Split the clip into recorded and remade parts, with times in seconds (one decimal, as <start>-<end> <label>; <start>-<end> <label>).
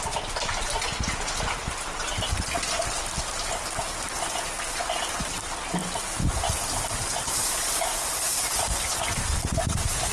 0.0-10.1 recorded